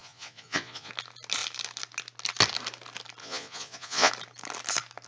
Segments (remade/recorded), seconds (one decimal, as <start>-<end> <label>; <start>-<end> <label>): 0.0-0.9 remade; 0.9-3.2 recorded; 3.2-4.1 remade; 4.1-5.1 recorded